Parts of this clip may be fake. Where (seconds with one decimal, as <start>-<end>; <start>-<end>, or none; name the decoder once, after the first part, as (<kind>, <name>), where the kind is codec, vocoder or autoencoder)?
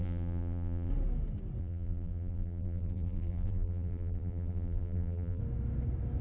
0.0-0.9 (vocoder, BigVGAN v2); 1.6-5.4